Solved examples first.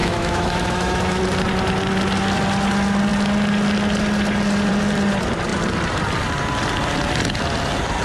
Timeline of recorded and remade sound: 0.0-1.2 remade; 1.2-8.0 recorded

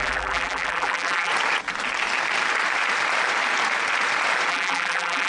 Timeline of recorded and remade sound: 0.0-1.3 remade; 1.3-4.5 recorded; 4.5-5.3 remade

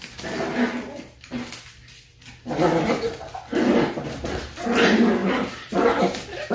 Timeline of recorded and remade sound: 0.0-6.5 recorded

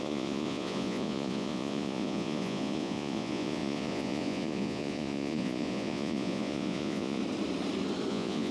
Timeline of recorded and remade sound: 0.0-7.2 remade; 7.2-8.1 recorded; 8.1-8.5 remade

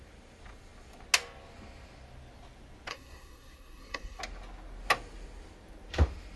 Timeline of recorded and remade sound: 0.0-2.9 recorded; 2.9-4.2 remade; 4.2-6.4 recorded

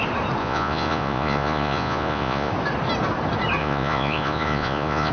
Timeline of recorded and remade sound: 0.0-0.4 recorded; 0.4-2.5 remade; 2.5-3.6 recorded; 3.6-5.1 remade